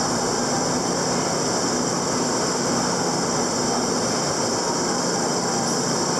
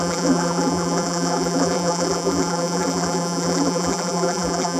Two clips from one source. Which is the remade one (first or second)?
second